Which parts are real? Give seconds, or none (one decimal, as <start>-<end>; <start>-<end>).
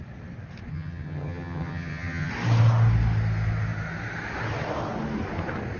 0.0-0.7; 2.3-5.8